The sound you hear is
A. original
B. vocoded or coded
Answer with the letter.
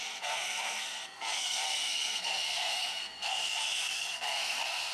B